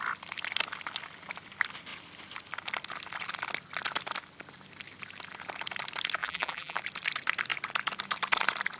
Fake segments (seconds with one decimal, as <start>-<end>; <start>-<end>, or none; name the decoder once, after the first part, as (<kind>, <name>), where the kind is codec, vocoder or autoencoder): 6.2-6.8 (vocoder, BigVGAN v2)